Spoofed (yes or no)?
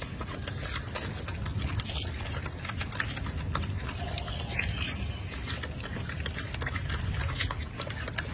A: no